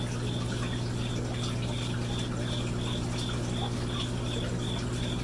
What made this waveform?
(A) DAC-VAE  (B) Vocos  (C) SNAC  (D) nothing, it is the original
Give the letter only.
D